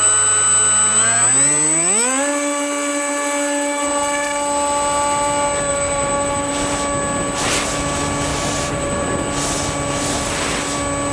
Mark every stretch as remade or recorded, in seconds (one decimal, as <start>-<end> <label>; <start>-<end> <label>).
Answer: 0.0-5.7 recorded; 5.7-6.5 remade; 6.5-8.3 recorded; 8.3-9.1 remade; 9.1-11.1 recorded